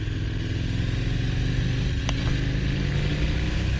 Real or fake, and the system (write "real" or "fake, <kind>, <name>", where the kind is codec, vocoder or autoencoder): real